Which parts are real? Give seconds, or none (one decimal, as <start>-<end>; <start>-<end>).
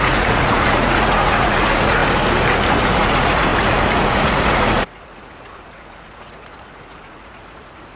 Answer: 2.0-2.7